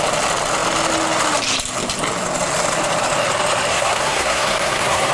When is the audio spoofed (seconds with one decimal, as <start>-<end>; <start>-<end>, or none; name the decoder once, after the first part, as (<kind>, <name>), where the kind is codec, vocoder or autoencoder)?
3.7-5.1 (codec, SNAC)